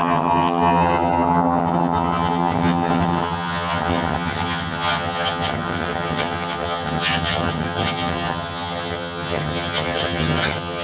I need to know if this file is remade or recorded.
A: remade